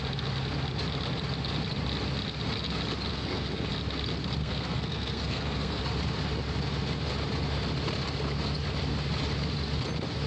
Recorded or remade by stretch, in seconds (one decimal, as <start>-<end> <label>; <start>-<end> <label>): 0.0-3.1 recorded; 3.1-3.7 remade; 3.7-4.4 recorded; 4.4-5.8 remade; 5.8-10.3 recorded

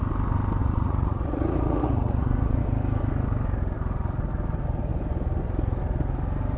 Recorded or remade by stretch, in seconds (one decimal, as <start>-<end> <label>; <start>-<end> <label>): 0.0-0.6 recorded; 0.6-2.6 remade; 2.6-6.6 recorded

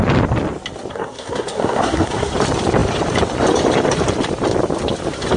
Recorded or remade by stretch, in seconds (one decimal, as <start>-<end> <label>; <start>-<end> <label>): 0.0-0.9 recorded; 0.9-2.3 remade; 2.3-5.4 recorded

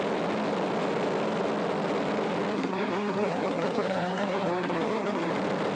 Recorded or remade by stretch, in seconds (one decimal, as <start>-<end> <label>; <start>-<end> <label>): 0.0-2.5 recorded; 2.5-5.3 remade; 5.3-5.8 recorded

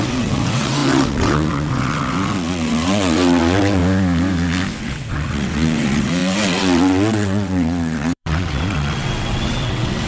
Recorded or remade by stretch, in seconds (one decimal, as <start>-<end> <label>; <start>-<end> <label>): 0.0-3.8 remade; 3.8-4.8 recorded; 4.8-10.1 remade